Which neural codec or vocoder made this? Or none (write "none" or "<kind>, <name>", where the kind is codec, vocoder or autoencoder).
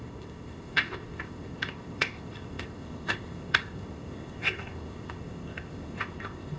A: codec, ZipCodec